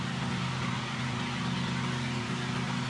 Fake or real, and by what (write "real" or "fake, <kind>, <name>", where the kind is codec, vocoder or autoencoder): real